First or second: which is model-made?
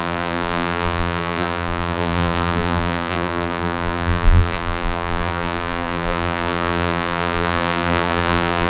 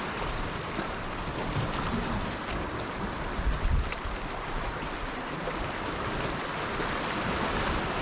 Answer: first